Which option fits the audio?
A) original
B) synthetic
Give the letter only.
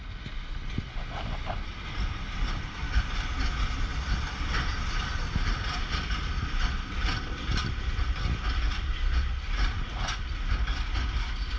A